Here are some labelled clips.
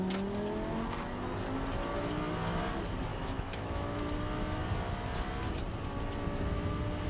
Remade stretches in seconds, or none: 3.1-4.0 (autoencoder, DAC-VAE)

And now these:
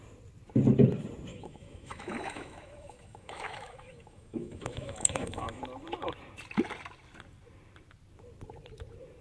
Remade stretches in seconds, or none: 1.3-5.6 (autoencoder, DAC-VAE)